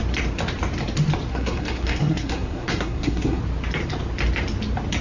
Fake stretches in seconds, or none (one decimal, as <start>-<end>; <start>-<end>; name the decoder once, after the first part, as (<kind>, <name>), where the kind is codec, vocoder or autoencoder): 1.3-3.4 (codec, SNAC)